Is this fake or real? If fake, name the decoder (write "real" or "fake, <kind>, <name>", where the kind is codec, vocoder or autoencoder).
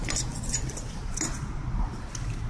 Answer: real